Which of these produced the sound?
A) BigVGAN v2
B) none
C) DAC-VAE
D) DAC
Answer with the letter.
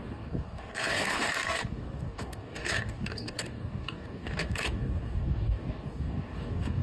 D